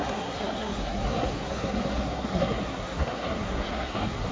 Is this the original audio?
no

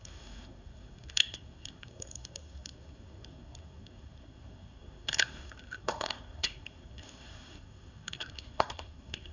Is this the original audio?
no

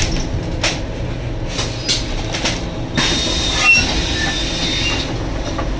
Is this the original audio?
yes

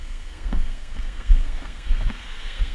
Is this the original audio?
no